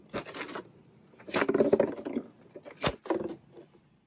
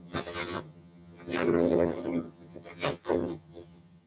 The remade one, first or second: second